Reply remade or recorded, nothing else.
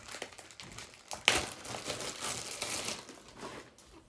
recorded